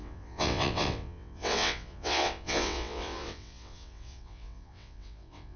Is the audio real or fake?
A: fake